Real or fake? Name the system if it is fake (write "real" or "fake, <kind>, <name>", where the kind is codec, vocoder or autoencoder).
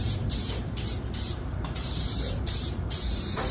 fake, vocoder, BigVGAN v2